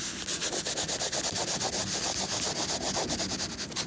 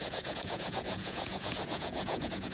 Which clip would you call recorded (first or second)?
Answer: first